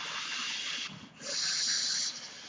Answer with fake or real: real